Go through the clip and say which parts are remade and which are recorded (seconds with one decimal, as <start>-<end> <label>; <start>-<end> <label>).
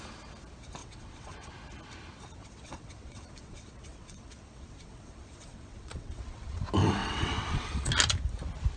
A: 0.0-0.8 recorded; 0.8-1.5 remade; 1.5-2.4 recorded; 2.4-6.6 remade; 6.6-7.0 recorded; 7.0-7.9 remade; 7.9-8.8 recorded